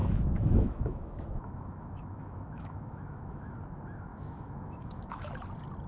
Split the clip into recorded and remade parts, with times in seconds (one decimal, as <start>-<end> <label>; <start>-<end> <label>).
0.0-3.5 remade; 3.5-4.1 recorded; 4.1-5.3 remade; 5.3-5.9 recorded